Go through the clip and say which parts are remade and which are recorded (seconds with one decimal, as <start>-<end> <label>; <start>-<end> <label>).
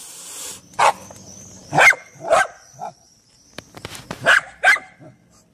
0.0-5.5 recorded